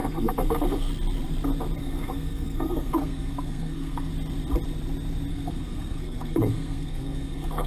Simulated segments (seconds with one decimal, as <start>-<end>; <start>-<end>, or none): 0.0-0.9; 1.8-4.1; 5.3-7.7